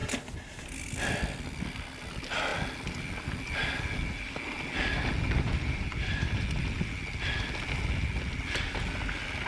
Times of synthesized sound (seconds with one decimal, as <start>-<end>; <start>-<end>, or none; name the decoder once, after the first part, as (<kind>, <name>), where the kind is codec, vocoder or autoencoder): none